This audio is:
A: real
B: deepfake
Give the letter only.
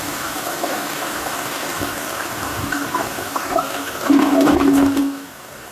B